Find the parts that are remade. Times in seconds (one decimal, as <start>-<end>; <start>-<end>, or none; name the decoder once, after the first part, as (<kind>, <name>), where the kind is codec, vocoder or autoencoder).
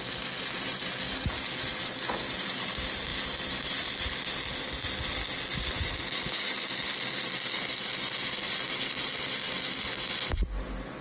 none